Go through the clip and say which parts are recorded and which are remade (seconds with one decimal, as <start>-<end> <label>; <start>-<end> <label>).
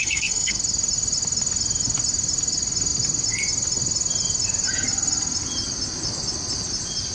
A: 0.0-0.6 remade; 0.6-7.1 recorded